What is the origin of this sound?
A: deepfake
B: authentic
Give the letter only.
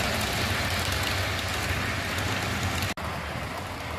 B